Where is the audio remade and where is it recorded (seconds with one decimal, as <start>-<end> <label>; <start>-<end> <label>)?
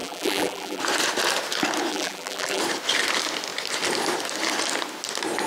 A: 0.0-0.8 remade; 0.8-1.9 recorded; 1.9-2.6 remade; 2.6-5.5 recorded